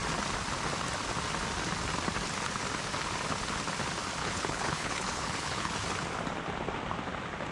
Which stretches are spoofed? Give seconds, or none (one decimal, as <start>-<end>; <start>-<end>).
4.2-5.7